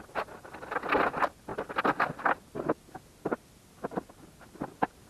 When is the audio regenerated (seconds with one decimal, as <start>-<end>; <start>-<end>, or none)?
none